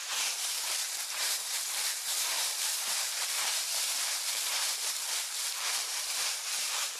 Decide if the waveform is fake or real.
fake